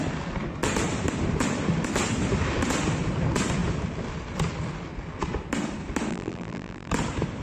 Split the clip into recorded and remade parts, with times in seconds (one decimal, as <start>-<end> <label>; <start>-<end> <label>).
0.0-6.1 recorded; 6.1-6.9 remade; 6.9-7.4 recorded